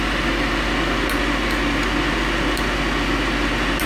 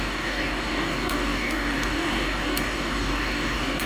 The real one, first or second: first